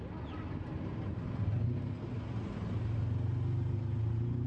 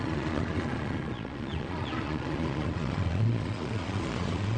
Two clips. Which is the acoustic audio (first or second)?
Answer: first